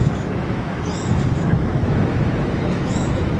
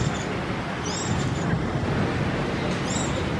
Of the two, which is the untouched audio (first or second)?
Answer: second